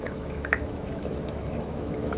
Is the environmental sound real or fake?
fake